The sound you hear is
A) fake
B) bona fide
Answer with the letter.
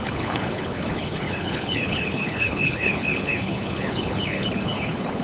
A